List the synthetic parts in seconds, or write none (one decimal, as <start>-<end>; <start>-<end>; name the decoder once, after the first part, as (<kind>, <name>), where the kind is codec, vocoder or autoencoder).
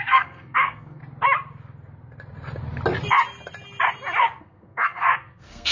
0.0-1.0 (codec, SNAC); 4.4-5.7